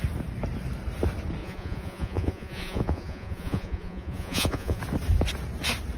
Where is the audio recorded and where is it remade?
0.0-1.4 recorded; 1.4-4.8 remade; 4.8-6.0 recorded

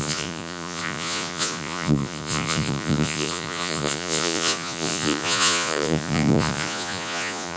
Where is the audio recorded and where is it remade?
0.0-7.6 remade

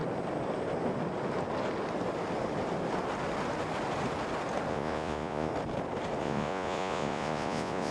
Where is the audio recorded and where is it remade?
0.0-4.7 recorded; 4.7-5.5 remade; 5.5-6.2 recorded; 6.2-7.9 remade

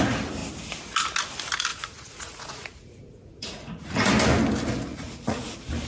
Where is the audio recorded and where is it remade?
0.0-1.7 recorded; 1.7-4.1 remade; 4.1-4.9 recorded; 4.9-5.5 remade; 5.5-5.9 recorded

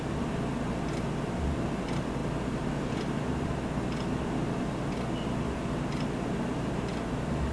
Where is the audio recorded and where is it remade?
0.0-7.5 recorded

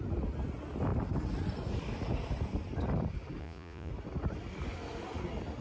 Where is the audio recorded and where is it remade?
0.0-3.4 recorded; 3.4-3.9 remade; 3.9-5.6 recorded

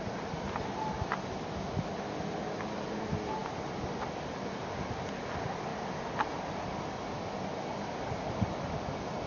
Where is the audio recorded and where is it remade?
0.0-9.3 recorded